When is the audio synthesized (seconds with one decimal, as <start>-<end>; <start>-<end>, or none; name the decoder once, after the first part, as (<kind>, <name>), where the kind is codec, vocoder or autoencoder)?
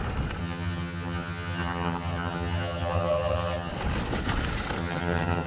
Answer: 0.4-3.7 (vocoder, HiFi-GAN); 4.8-5.5